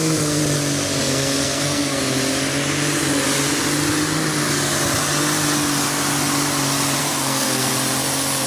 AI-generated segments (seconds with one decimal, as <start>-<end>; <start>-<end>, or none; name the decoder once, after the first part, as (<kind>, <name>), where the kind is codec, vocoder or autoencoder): 0.0-0.4 (codec, SNAC); 1.0-2.0; 7.0-7.7